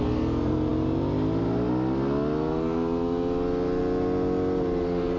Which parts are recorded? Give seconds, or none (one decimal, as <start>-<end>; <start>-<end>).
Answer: 0.0-5.2